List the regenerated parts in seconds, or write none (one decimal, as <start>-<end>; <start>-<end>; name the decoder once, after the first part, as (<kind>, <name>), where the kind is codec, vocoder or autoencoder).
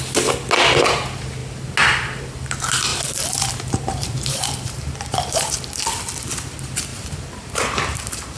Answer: 2.9-5.5 (vocoder, BigVGAN v2); 6.9-8.4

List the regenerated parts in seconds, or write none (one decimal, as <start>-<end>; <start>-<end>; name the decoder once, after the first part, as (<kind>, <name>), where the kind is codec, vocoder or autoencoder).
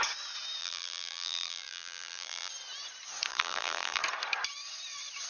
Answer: 0.6-2.5 (vocoder, BigVGAN v2); 3.3-4.0